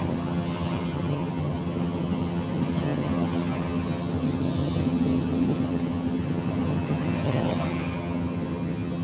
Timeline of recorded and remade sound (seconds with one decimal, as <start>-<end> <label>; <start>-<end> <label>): 0.0-9.0 remade